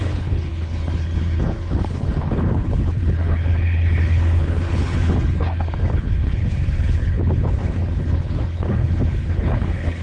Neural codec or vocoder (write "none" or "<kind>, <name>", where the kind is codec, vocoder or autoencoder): codec, HILCodec